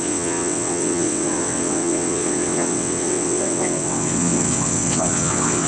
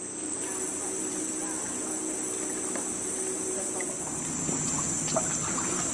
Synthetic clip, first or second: first